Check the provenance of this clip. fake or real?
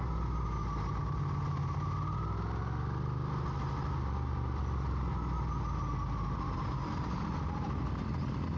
real